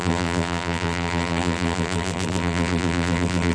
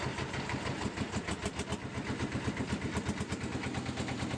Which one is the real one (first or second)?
second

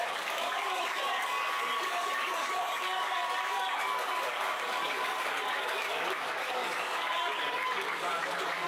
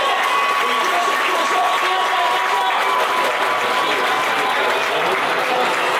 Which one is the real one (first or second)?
second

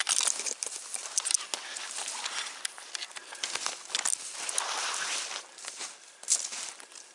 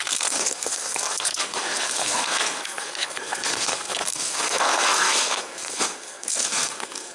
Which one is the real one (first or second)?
first